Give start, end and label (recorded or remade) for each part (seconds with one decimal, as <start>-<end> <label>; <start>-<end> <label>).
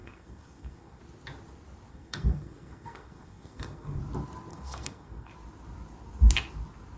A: 0.0-1.0 remade; 1.0-1.9 recorded; 1.9-4.0 remade; 4.0-4.5 recorded; 4.5-5.3 remade; 5.3-7.0 recorded